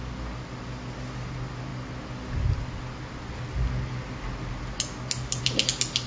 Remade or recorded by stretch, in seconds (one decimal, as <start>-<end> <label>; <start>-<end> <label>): 0.0-6.1 recorded